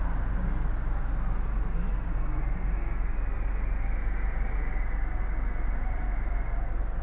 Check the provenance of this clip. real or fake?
real